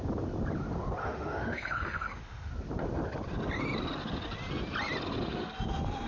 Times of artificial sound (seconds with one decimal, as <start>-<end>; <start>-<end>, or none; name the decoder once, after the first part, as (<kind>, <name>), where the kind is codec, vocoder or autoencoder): 1.0-2.5 (autoencoder, DAC-VAE)